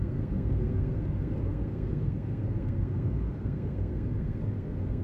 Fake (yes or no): yes